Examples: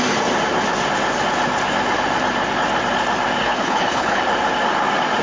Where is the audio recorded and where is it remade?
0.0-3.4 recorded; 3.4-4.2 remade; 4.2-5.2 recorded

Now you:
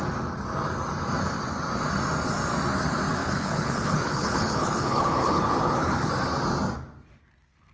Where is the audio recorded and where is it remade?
0.0-3.2 recorded; 3.2-6.1 remade; 6.1-7.7 recorded

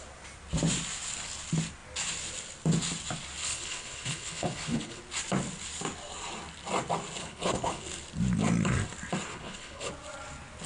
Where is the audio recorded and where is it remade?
0.0-3.4 recorded; 3.4-5.0 remade; 5.0-7.2 recorded; 7.2-7.8 remade; 7.8-9.3 recorded; 9.3-9.9 remade; 9.9-10.7 recorded

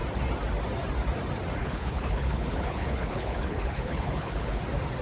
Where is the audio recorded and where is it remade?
0.0-1.6 recorded; 1.6-4.6 remade; 4.6-5.0 recorded

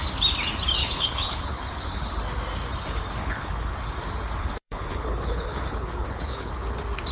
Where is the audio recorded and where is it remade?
0.0-0.8 recorded; 0.8-2.1 remade; 2.1-3.2 recorded; 3.2-3.9 remade; 3.9-4.4 recorded; 4.4-6.5 remade; 6.5-7.1 recorded

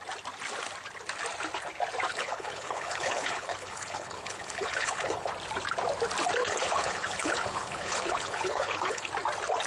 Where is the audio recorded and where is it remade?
0.0-2.1 recorded; 2.1-5.3 remade; 5.3-6.4 recorded; 6.4-9.1 remade; 9.1-9.7 recorded

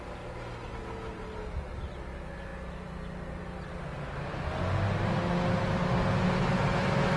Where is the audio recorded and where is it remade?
0.0-7.2 recorded

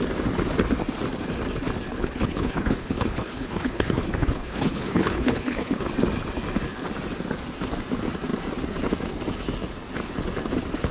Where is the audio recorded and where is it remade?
0.0-1.9 recorded; 1.9-5.9 remade; 5.9-10.9 recorded